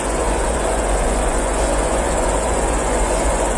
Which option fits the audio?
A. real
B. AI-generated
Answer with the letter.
B